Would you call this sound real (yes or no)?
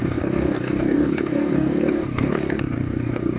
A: no